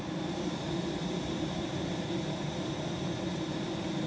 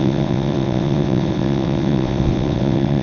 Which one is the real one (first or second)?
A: first